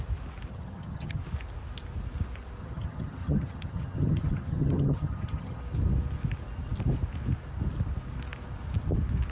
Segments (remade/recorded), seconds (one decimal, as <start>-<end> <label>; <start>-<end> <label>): 0.0-0.5 recorded; 0.5-1.2 remade; 1.2-2.6 recorded; 2.6-5.6 remade; 5.6-9.3 recorded